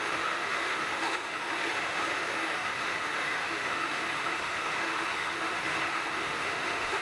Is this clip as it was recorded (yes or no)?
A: no